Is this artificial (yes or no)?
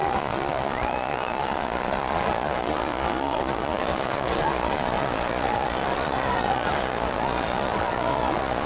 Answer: yes